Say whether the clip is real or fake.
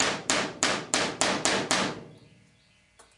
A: real